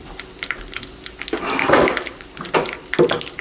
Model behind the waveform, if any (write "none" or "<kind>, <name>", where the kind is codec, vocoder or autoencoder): none